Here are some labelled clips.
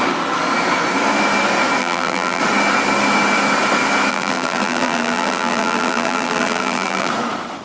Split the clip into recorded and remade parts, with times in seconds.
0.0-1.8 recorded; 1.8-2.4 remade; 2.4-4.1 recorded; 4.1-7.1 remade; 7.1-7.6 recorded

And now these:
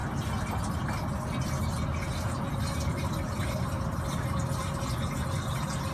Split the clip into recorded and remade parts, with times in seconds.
0.0-5.9 recorded

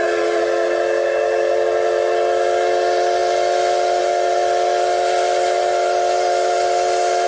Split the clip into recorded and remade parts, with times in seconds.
0.0-7.3 recorded